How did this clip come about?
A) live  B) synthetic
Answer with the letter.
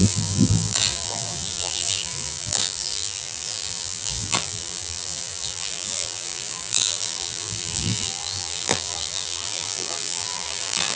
B